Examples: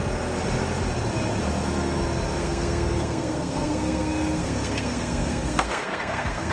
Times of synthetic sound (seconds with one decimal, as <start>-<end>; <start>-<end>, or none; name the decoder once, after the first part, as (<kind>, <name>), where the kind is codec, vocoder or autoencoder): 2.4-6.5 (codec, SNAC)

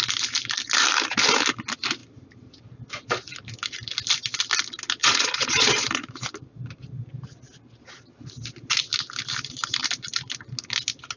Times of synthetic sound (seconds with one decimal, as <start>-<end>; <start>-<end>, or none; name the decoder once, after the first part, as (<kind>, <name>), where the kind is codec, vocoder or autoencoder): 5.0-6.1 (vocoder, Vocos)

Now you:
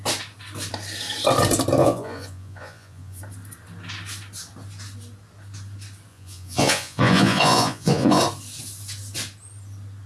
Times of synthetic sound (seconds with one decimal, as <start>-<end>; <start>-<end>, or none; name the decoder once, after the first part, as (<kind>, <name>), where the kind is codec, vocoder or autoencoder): 1.8-3.2 (vocoder, Vocos); 6.1-8.2

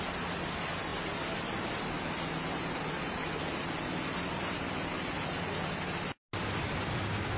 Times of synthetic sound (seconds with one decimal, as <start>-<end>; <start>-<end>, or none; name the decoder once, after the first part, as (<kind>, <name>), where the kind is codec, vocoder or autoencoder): none